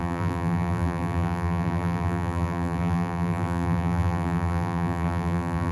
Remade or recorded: remade